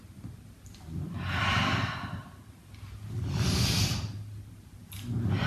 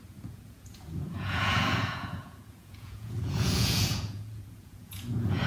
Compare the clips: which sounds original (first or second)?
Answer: first